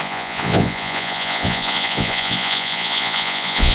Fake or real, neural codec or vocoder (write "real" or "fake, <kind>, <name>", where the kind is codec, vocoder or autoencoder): fake, vocoder, Vocos